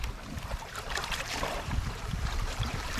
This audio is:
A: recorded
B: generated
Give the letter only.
B